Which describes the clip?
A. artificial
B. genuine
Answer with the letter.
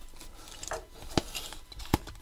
B